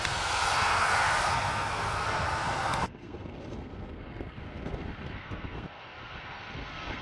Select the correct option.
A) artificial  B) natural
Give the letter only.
A